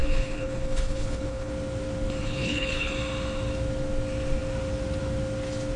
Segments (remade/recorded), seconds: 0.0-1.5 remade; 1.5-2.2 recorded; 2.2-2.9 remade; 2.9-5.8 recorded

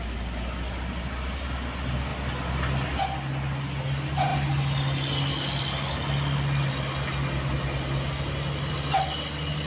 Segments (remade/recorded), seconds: 0.0-9.7 recorded

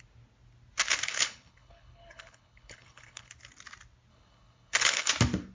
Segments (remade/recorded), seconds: 0.0-1.1 recorded; 1.1-3.3 remade; 3.3-4.1 recorded; 4.1-5.1 remade; 5.1-5.5 recorded

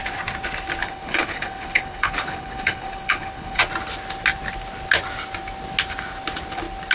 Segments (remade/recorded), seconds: 0.0-0.8 recorded; 0.8-3.6 remade; 3.6-6.9 recorded

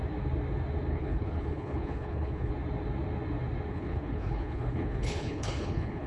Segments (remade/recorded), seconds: 0.0-0.9 recorded; 0.9-2.5 remade; 2.5-3.7 recorded; 3.7-6.1 remade

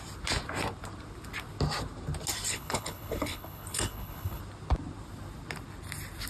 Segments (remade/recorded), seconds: 0.0-2.5 recorded; 2.5-4.4 remade; 4.4-6.3 recorded

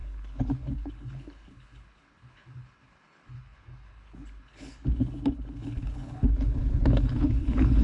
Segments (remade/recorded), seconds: 0.0-7.8 remade